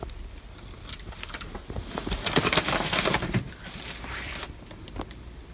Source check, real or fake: real